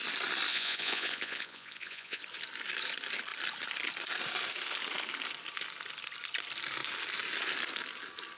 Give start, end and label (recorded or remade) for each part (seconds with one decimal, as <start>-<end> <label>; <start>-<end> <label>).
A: 0.0-0.5 recorded; 0.5-2.2 remade; 2.2-8.4 recorded